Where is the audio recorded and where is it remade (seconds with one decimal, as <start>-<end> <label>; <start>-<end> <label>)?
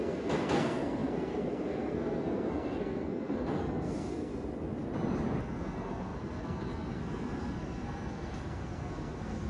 0.0-4.3 remade; 4.3-5.4 recorded; 5.4-9.5 remade